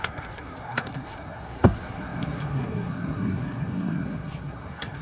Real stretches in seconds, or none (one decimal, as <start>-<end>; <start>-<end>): none